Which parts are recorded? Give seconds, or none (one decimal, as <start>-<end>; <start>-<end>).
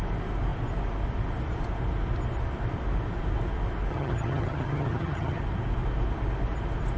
0.0-3.9; 5.4-7.0